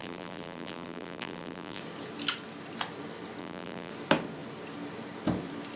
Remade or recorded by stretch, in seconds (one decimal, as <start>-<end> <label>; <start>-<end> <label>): 0.0-1.8 remade; 1.8-3.4 recorded; 3.4-3.9 remade; 3.9-5.8 recorded